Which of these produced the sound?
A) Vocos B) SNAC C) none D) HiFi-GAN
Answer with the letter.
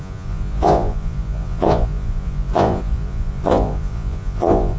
A